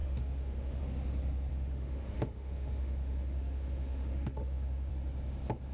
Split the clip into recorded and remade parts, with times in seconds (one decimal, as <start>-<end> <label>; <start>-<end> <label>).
0.0-0.8 remade; 0.8-1.5 recorded; 1.5-4.9 remade; 4.9-5.7 recorded